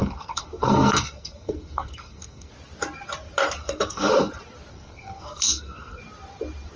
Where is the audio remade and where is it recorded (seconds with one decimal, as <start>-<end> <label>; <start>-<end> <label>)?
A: 0.0-2.5 remade; 2.5-3.6 recorded; 3.6-4.3 remade; 4.3-4.7 recorded; 4.7-6.0 remade; 6.0-6.8 recorded